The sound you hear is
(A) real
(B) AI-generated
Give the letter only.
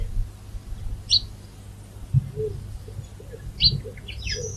A